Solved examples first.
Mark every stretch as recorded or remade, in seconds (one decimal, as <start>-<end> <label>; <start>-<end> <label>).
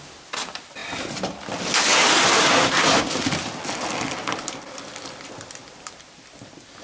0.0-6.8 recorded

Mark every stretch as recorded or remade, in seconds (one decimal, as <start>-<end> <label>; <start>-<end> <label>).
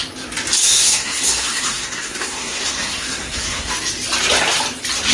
0.0-0.6 recorded; 0.6-3.7 remade; 3.7-5.1 recorded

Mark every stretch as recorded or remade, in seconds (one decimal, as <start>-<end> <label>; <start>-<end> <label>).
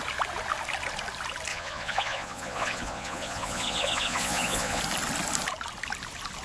0.0-1.5 recorded; 1.5-4.8 remade; 4.8-6.4 recorded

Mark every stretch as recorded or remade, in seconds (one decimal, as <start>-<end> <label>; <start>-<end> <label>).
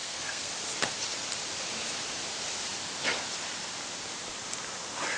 0.0-0.5 remade; 0.5-5.2 recorded